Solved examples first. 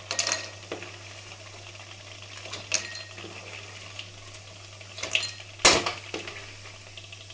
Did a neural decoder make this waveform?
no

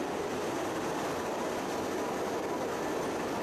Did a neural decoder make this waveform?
no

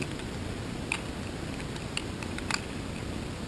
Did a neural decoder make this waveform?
no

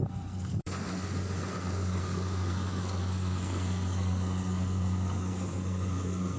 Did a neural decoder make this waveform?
yes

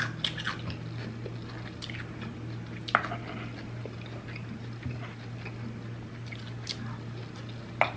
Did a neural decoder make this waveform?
no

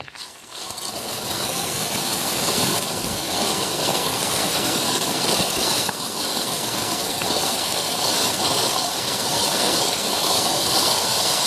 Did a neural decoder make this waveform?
yes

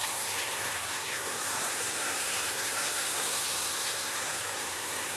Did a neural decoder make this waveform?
yes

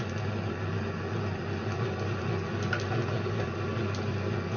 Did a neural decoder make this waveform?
no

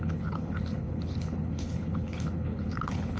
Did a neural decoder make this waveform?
yes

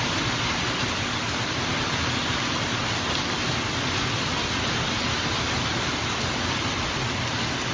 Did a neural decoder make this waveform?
no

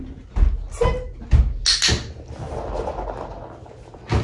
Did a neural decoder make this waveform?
no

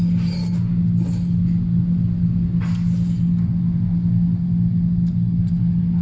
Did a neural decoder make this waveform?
no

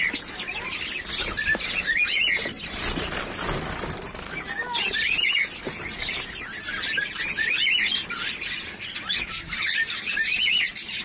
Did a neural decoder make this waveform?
no